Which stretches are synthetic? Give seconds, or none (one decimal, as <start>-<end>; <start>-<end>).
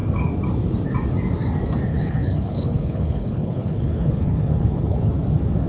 1.9-5.1